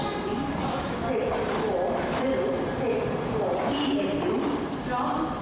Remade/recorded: remade